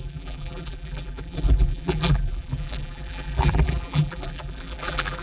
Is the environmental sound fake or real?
fake